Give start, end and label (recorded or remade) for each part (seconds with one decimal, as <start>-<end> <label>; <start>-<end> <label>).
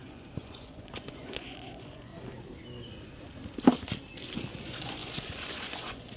0.0-2.1 remade; 2.1-4.6 recorded; 4.6-6.2 remade